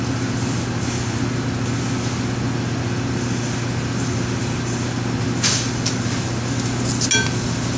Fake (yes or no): no